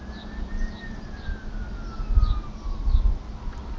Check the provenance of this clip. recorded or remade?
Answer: recorded